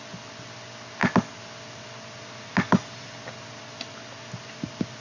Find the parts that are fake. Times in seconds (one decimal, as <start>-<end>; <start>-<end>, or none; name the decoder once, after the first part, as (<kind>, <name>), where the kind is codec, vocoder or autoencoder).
none

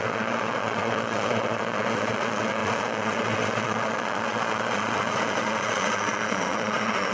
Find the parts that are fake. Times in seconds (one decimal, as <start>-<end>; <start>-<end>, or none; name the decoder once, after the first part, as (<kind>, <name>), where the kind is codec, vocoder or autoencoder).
0.0-7.1 (vocoder, Vocos)

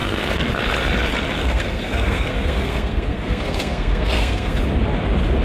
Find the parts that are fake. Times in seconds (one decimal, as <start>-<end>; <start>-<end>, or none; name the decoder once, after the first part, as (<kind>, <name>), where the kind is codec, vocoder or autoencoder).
0.0-0.5 (codec, SNAC); 1.4-4.6

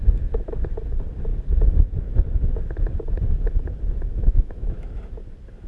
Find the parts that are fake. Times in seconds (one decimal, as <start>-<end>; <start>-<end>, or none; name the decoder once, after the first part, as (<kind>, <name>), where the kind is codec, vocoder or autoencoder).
4.1-5.0 (autoencoder, DAC-VAE)